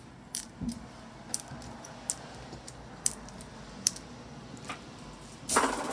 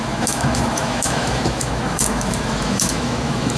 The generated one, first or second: second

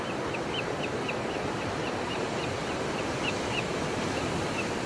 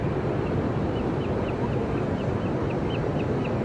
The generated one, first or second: first